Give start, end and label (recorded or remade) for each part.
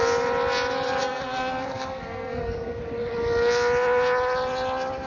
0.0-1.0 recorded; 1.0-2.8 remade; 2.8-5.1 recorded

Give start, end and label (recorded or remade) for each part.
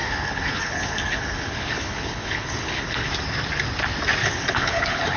0.0-3.1 remade; 3.1-4.2 recorded; 4.2-5.2 remade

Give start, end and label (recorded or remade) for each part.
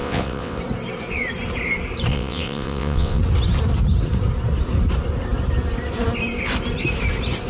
0.0-0.6 remade; 0.6-2.1 recorded; 2.1-3.2 remade; 3.2-7.5 recorded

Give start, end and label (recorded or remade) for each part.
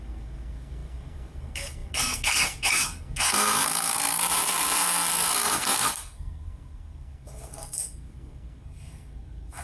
0.0-9.6 remade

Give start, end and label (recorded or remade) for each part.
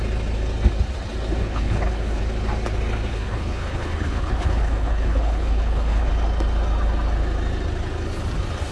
0.0-1.4 recorded; 1.4-2.2 remade; 2.2-3.1 recorded; 3.1-6.1 remade; 6.1-8.7 recorded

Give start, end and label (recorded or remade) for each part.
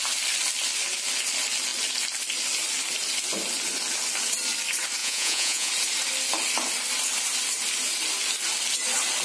0.0-5.0 recorded; 5.0-5.7 remade; 5.7-9.2 recorded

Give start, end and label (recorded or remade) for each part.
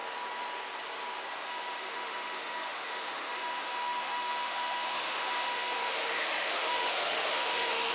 0.0-1.4 recorded; 1.4-7.9 remade